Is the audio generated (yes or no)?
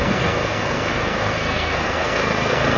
yes